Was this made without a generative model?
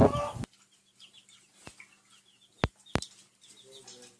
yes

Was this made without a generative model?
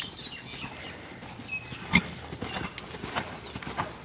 yes